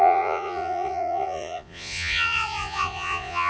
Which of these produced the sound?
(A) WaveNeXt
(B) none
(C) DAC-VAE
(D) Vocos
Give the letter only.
D